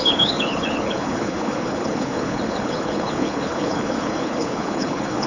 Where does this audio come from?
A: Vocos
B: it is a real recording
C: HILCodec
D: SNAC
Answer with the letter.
C